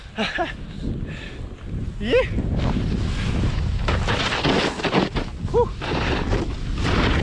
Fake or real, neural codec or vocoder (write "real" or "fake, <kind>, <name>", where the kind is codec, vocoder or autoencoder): real